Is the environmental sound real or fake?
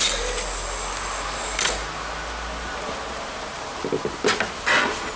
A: real